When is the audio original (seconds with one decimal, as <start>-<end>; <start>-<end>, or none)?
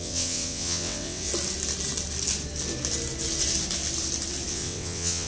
1.3-4.5